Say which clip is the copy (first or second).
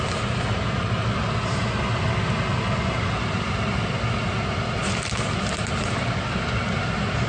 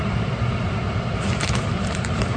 second